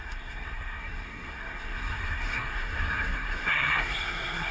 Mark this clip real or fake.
fake